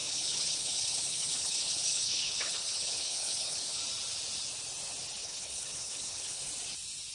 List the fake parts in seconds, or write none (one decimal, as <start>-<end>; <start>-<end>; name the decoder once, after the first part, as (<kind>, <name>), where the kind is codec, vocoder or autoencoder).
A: 0.0-3.8 (codec, HILCodec); 5.2-6.5